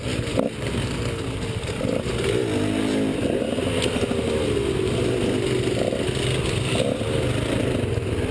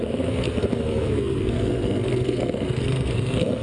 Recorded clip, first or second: first